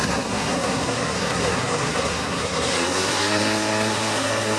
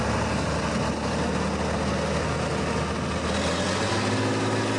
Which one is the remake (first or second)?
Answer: first